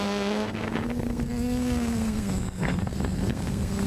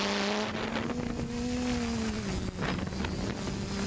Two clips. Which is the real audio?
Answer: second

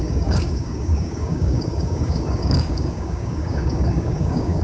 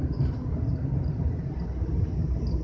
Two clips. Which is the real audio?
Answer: second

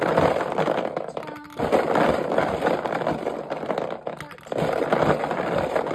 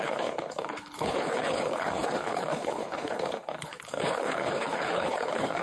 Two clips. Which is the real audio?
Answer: first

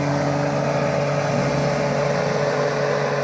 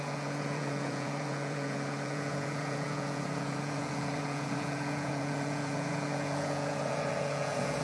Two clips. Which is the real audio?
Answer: first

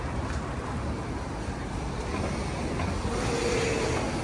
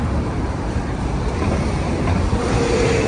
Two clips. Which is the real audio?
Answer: first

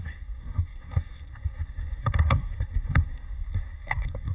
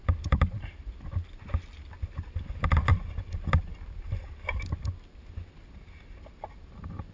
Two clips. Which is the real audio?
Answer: second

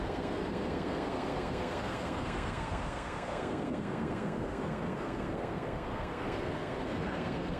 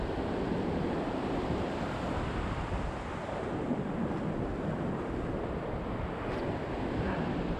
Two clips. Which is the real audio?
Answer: second